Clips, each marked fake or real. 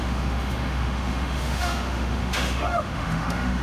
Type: fake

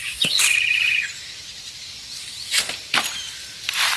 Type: fake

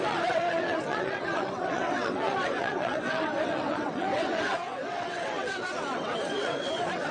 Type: fake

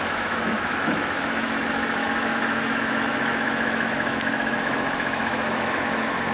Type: fake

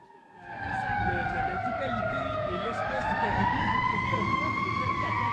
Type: fake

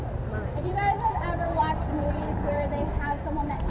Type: fake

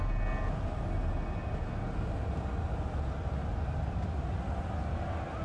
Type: real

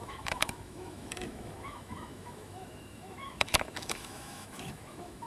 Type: fake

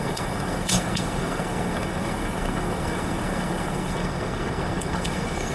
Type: fake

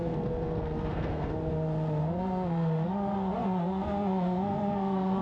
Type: fake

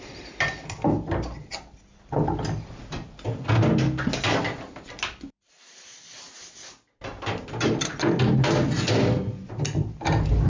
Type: real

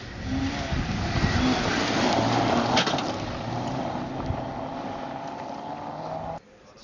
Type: real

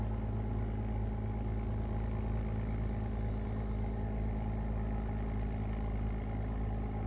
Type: real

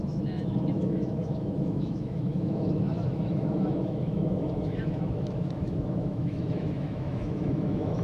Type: fake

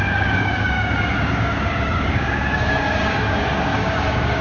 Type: fake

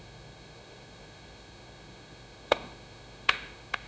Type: fake